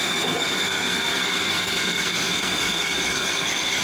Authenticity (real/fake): fake